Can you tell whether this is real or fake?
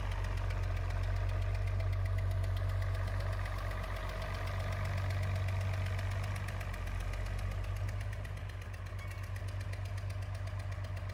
real